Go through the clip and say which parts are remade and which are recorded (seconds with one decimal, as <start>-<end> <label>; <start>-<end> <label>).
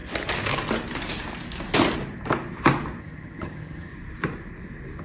0.0-3.0 recorded; 3.0-3.9 remade; 3.9-5.0 recorded